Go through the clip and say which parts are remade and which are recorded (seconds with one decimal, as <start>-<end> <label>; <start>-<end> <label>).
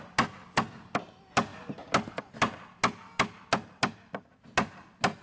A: 0.0-5.2 recorded